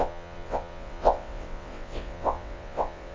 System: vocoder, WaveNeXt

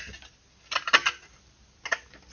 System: none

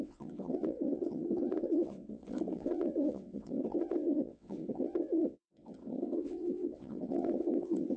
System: vocoder, WaveNeXt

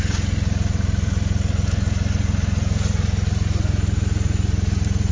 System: none